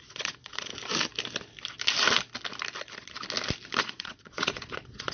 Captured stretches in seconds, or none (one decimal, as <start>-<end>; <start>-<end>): 0.7-3.8